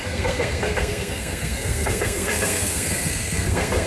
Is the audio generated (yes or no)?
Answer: yes